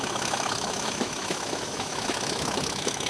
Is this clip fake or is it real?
fake